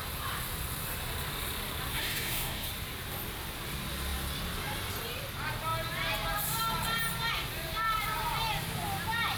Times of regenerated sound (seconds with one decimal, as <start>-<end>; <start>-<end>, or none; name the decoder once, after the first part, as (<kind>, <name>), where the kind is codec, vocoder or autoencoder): 1.9-2.7 (codec, DAC)

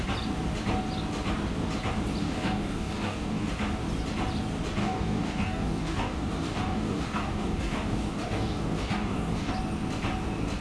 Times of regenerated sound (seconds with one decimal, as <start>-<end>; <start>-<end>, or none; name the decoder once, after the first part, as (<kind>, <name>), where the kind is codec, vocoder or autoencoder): 2.2-3.5 (codec, DAC); 4.8-9.5

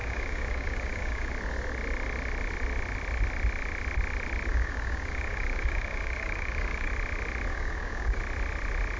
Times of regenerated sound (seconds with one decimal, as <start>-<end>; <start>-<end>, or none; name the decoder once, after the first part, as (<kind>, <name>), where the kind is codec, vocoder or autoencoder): 0.0-1.3 (codec, DAC); 4.5-6.9; 7.5-8.2

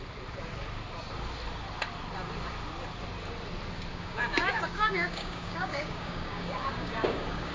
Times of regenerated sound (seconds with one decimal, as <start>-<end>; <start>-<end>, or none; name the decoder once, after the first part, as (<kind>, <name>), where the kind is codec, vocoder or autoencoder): 3.9-7.5 (codec, DAC)

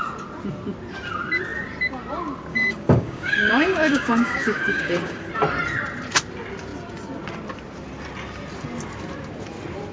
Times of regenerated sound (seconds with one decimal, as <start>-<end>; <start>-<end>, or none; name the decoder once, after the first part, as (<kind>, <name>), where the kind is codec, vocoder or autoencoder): 2.5-5.3 (codec, DAC)

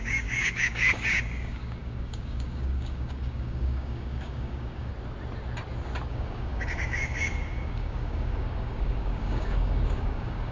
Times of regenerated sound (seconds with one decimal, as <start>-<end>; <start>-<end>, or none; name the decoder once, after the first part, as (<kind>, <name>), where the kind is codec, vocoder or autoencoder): 0.0-4.9 (codec, DAC); 6.1-10.5

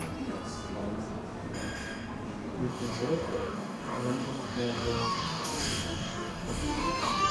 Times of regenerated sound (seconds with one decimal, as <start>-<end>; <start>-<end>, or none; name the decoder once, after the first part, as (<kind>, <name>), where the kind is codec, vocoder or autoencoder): 2.7-7.3 (codec, DAC)